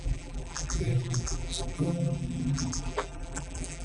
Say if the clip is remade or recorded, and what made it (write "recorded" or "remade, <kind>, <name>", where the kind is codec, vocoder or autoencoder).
remade, vocoder, BigVGAN v2